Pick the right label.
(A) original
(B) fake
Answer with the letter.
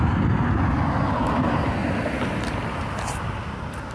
A